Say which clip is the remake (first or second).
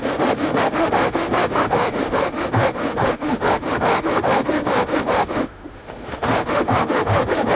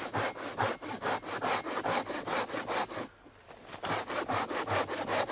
first